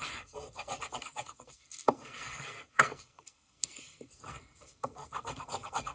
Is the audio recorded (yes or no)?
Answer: no